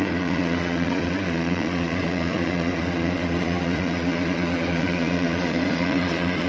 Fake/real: fake